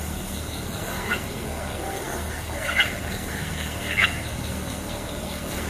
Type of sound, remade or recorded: remade